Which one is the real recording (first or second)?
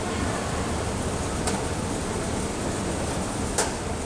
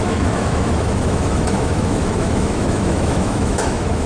first